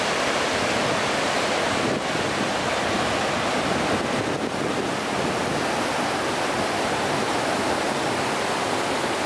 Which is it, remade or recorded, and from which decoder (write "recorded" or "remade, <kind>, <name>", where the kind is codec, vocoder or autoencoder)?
recorded